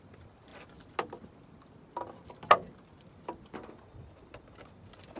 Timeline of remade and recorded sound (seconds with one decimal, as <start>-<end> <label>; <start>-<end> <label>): 0.0-5.2 recorded